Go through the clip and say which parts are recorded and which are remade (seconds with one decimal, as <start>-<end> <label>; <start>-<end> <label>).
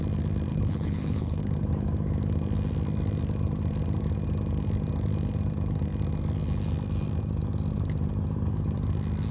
0.0-0.5 recorded; 0.5-1.6 remade; 1.6-9.3 recorded